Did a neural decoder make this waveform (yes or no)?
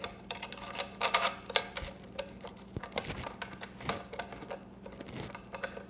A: no